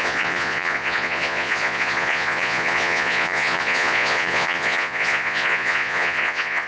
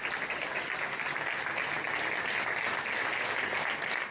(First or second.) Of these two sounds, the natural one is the second